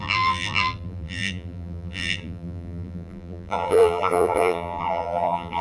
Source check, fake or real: fake